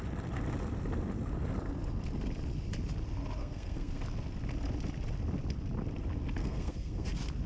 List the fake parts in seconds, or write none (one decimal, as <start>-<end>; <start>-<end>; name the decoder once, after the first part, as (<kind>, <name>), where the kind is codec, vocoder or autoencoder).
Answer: 3.4-4.0 (codec, SNAC); 6.4-7.1